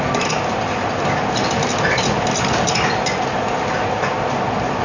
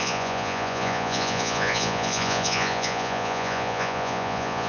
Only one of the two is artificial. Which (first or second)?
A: second